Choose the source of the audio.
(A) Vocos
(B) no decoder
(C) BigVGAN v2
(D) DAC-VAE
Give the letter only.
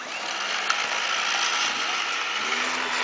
B